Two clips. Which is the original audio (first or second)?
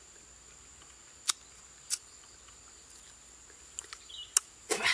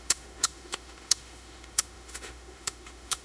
first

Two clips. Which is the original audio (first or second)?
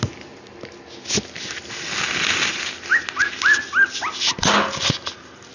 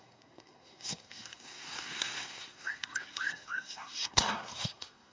first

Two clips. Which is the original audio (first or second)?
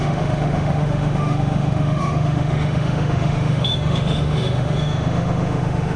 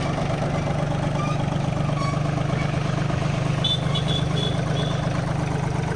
second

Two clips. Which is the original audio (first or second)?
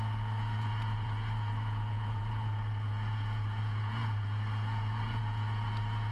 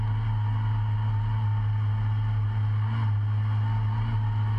second